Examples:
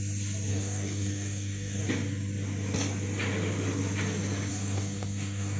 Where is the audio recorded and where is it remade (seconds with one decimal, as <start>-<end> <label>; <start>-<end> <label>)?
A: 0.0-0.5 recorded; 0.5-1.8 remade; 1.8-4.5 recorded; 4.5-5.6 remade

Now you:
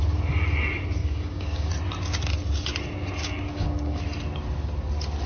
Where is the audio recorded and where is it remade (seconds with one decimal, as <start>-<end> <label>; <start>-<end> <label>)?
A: 0.0-1.0 recorded; 1.0-1.7 remade; 1.7-3.2 recorded; 3.2-4.0 remade; 4.0-5.3 recorded

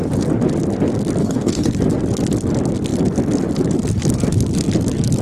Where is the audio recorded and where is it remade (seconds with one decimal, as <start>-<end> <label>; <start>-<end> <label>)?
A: 0.0-1.2 recorded; 1.2-1.7 remade; 1.7-5.2 recorded

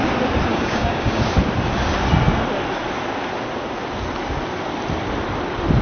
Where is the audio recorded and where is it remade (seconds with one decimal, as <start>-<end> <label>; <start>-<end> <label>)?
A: 0.0-0.5 recorded; 0.5-1.2 remade; 1.2-5.8 recorded

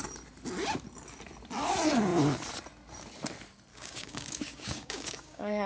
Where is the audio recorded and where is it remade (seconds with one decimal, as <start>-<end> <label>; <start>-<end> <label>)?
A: 0.0-3.7 recorded; 3.7-5.7 remade